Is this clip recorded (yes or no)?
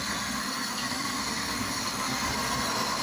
no